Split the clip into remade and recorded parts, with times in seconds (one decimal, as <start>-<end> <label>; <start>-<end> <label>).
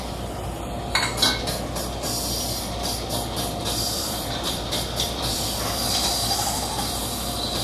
0.0-3.6 recorded; 3.6-7.0 remade; 7.0-7.6 recorded